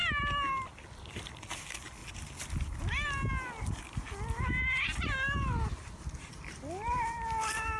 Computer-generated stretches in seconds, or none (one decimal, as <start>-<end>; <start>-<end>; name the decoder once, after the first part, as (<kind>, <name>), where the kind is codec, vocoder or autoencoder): 0.7-2.0 (vocoder, BigVGAN v2); 6.2-7.8